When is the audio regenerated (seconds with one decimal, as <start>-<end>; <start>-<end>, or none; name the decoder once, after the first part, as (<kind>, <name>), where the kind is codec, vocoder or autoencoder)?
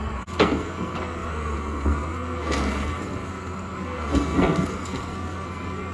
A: 0.0-5.9 (codec, SNAC)